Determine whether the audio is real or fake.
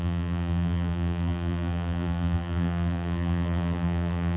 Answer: fake